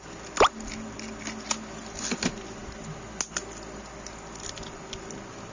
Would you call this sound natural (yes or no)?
yes